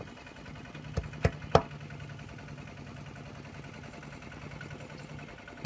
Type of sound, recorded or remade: recorded